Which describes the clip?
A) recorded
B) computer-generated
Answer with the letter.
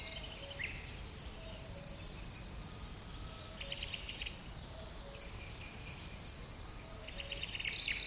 A